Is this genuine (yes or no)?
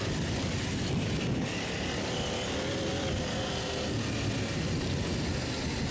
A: yes